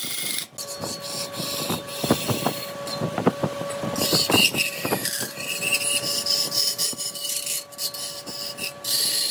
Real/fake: real